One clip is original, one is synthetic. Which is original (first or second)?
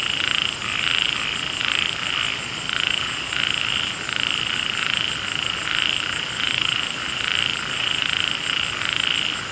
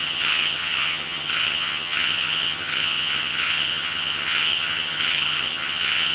first